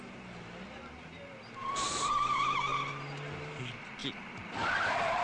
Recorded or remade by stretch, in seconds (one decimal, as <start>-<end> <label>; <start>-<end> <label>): 0.0-5.2 recorded